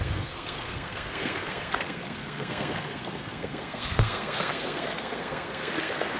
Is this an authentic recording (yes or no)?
no